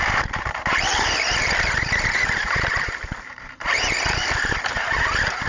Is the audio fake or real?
fake